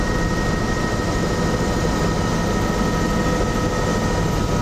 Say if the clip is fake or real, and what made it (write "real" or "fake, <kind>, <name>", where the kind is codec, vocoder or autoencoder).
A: real